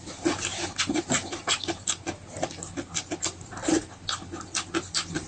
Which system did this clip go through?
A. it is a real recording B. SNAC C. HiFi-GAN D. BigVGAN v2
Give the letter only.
D